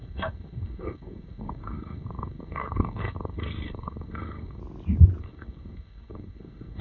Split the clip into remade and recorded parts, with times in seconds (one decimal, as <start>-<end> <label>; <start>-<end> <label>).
0.0-4.6 remade; 4.6-5.2 recorded; 5.2-6.8 remade